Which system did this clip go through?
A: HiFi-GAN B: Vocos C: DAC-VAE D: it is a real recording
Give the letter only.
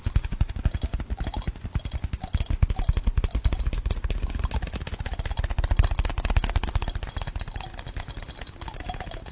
D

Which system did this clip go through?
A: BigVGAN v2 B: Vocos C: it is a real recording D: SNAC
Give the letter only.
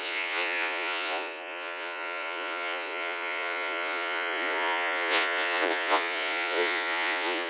B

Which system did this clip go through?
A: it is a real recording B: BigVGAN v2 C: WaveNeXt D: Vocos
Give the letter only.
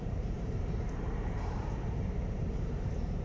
B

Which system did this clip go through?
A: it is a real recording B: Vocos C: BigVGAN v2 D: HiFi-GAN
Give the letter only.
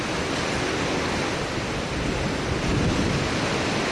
A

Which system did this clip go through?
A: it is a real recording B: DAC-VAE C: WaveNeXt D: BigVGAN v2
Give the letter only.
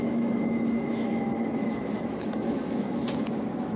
B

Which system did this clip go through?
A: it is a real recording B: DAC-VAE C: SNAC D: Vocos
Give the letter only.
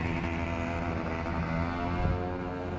A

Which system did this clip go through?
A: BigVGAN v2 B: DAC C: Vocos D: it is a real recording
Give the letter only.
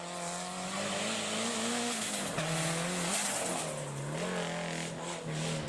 D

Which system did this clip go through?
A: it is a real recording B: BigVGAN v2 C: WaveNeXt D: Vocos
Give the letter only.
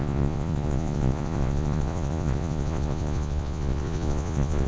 D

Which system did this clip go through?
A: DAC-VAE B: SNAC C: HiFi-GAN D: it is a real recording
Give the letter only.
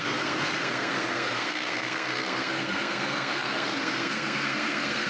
B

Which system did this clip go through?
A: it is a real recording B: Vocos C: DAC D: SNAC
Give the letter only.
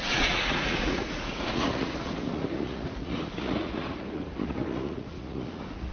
B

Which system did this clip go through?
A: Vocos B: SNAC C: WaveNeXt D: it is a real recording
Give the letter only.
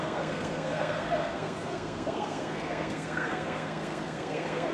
B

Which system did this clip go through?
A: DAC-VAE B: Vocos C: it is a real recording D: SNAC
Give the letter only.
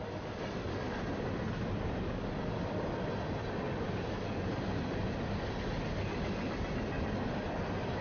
C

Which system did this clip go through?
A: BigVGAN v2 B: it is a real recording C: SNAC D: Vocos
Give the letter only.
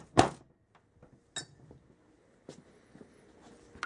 B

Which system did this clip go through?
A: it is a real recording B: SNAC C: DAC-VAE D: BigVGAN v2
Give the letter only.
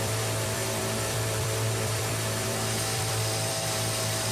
D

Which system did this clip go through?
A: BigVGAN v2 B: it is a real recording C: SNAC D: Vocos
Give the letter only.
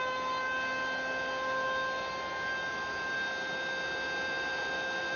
B